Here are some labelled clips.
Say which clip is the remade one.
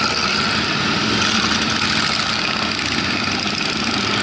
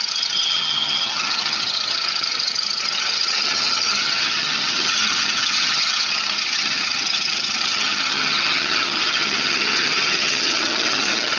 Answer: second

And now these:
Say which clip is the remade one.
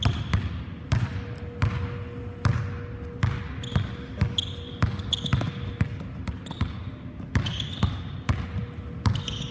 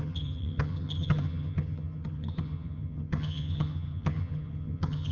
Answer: second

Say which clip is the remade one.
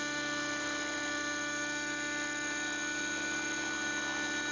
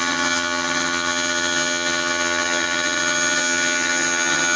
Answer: second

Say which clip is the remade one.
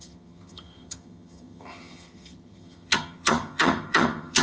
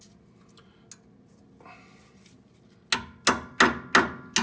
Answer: first